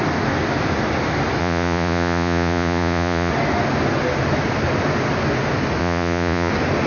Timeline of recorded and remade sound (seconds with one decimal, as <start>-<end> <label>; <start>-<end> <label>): 0.0-1.4 recorded; 1.4-3.3 remade; 3.3-5.8 recorded; 5.8-6.5 remade; 6.5-6.9 recorded